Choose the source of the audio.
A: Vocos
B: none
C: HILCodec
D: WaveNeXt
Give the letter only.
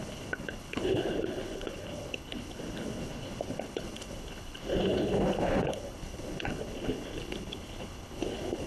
C